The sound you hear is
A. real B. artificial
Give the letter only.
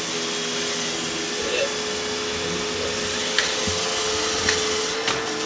A